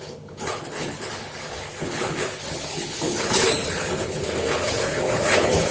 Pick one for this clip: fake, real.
fake